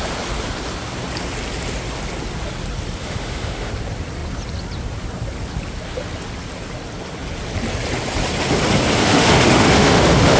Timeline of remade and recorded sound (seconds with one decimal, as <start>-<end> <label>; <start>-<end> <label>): 0.0-3.0 recorded; 3.0-3.7 remade; 3.7-9.0 recorded; 9.0-10.4 remade